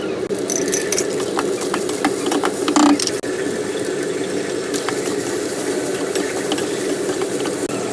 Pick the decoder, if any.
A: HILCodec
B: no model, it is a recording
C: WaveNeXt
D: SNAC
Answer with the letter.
B